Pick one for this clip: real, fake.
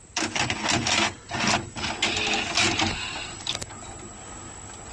fake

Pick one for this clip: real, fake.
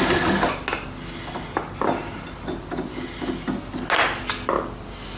real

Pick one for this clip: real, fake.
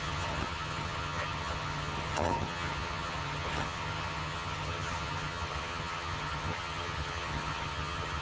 fake